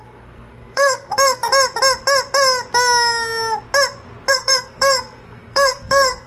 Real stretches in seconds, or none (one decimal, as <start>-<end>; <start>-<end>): 1.5-4.3